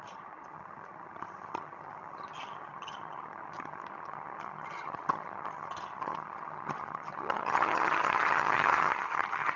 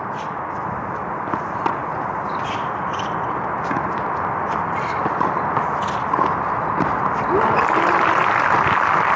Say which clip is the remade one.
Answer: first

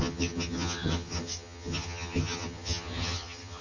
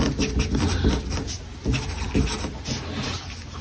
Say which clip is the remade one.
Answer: first